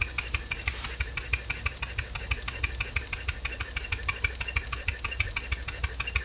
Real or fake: real